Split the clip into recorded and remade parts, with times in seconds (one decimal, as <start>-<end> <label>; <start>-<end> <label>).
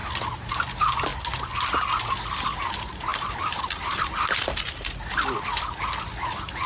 0.0-6.7 recorded